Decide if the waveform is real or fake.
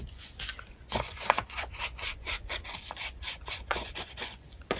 fake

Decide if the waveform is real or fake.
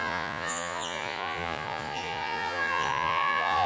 fake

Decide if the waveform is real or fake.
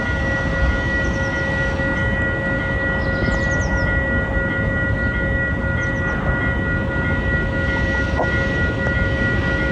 real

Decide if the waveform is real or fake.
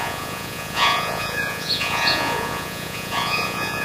fake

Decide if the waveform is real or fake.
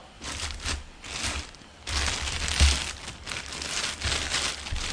real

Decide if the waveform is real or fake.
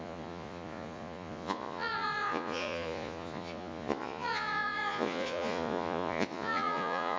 fake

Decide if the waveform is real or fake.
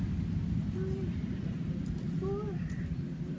real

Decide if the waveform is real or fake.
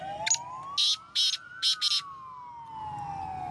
real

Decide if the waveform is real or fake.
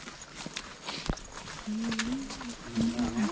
real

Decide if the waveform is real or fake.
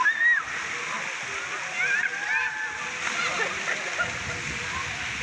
real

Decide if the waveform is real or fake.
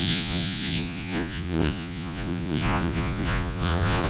fake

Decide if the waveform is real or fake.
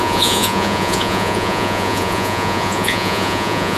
fake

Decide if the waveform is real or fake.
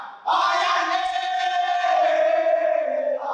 real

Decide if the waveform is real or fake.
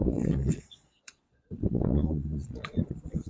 fake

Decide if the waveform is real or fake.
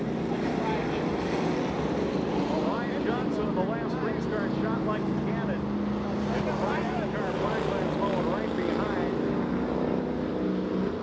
real